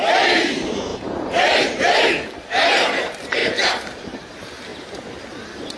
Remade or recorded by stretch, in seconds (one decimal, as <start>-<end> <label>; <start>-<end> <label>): 0.0-4.7 remade; 4.7-5.8 recorded